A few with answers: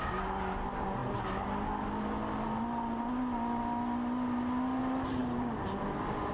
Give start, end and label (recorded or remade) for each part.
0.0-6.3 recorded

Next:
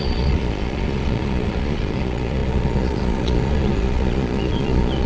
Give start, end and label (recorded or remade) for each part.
0.0-5.1 remade